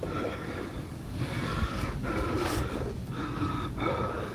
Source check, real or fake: fake